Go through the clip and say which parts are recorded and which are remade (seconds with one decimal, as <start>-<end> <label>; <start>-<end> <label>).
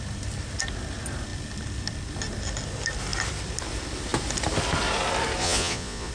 0.0-5.4 recorded; 5.4-6.1 remade